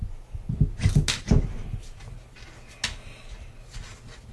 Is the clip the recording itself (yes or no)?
yes